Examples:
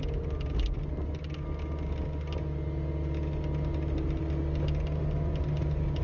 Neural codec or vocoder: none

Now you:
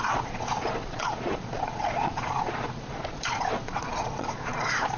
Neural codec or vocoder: vocoder, Vocos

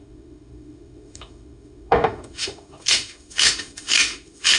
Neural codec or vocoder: autoencoder, DAC-VAE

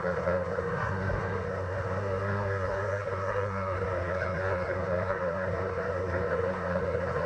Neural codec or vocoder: codec, SNAC